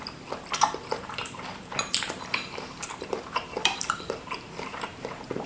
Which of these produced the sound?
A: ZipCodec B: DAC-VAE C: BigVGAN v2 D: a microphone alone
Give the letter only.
C